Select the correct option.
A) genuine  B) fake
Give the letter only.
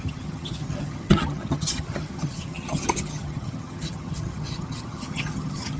B